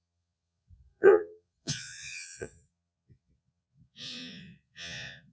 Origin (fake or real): fake